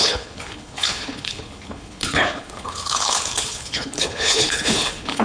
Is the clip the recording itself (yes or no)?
no